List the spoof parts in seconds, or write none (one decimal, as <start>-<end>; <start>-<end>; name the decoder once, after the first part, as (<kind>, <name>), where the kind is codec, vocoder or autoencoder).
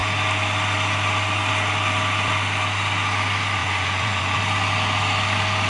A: 3.6-4.4 (vocoder, Vocos)